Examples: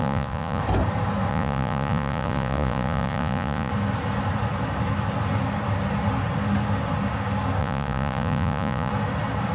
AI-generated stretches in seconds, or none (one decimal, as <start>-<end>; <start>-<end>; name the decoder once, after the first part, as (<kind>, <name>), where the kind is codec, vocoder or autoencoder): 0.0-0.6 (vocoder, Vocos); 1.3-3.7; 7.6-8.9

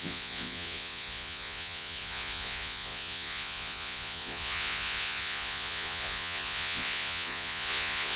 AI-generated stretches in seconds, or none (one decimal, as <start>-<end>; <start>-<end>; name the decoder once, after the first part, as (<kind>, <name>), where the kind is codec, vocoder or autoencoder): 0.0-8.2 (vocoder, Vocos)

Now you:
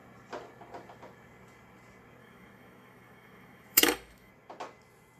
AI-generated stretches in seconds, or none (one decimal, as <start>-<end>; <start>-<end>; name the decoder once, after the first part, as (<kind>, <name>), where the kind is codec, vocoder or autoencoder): 2.2-4.3 (autoencoder, DAC-VAE)

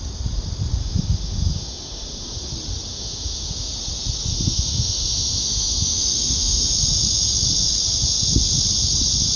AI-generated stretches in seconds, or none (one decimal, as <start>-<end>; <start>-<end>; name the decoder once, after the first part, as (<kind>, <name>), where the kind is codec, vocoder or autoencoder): 0.8-2.4 (autoencoder, DAC-VAE); 2.9-3.7; 4.3-6.7

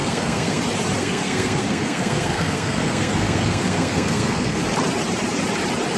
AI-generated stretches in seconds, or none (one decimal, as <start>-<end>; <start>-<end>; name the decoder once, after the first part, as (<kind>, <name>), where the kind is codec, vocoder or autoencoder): 0.0-0.6 (codec, SNAC); 1.0-4.6

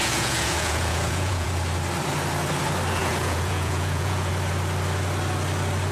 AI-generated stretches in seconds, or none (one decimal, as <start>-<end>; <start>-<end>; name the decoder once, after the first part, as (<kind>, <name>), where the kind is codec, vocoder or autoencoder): 0.0-1.5 (vocoder, Vocos); 3.0-4.3